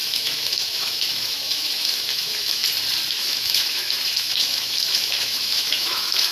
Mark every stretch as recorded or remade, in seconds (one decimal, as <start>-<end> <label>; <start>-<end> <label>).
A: 0.0-2.6 remade; 2.6-3.1 recorded; 3.1-6.3 remade